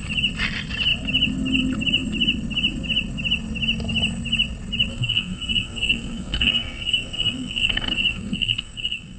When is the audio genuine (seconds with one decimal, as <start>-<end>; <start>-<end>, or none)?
0.0-4.9